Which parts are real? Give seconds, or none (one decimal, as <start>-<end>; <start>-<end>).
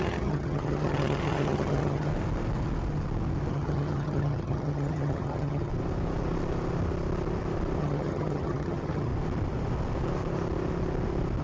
2.1-3.5; 5.7-7.8; 9.1-11.4